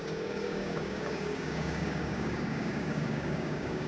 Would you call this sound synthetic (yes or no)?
yes